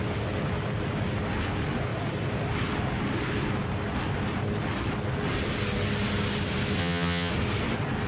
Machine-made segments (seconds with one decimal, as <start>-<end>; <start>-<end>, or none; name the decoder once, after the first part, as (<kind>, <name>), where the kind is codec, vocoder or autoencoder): 6.8-7.3 (vocoder, HiFi-GAN)